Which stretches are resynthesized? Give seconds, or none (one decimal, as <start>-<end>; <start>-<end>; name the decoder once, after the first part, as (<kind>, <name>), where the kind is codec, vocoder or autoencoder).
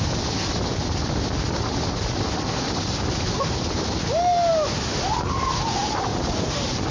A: 6.1-6.9 (vocoder, BigVGAN v2)